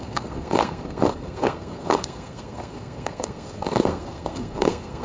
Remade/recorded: remade